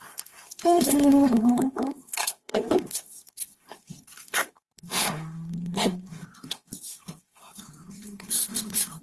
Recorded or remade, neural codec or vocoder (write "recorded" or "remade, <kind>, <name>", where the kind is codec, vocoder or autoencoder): remade, codec, SNAC